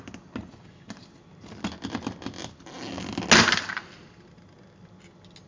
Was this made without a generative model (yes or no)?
yes